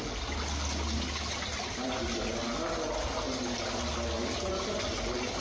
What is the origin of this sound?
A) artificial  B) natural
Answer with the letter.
B